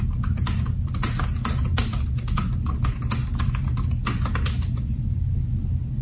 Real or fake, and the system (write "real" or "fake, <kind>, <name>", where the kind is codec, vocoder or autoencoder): real